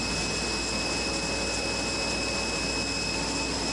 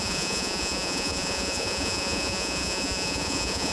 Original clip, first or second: first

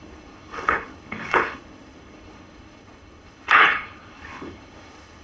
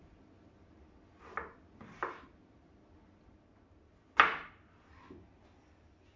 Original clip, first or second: second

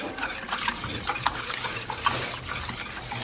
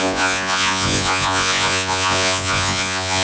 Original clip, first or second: first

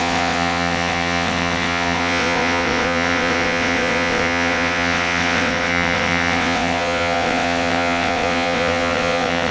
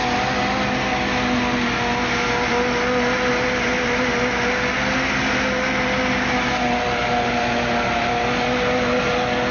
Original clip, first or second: second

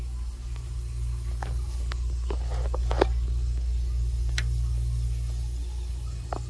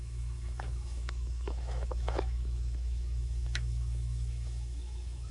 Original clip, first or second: first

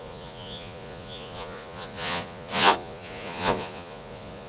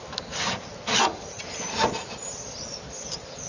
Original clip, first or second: second